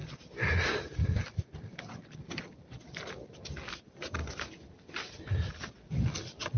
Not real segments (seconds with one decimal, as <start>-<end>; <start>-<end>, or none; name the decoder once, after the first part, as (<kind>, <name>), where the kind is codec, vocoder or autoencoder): none